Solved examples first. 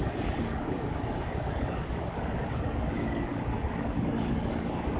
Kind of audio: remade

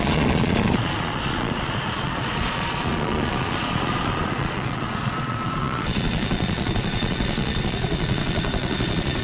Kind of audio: remade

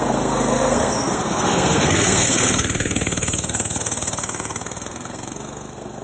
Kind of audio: remade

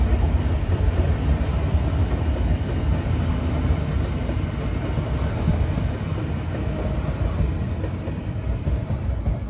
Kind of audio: recorded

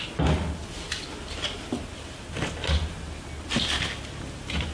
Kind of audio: recorded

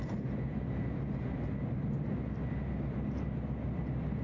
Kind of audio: recorded